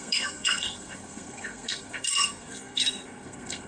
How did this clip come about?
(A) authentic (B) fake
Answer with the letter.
B